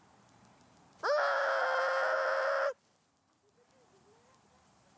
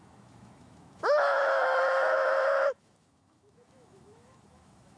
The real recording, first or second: first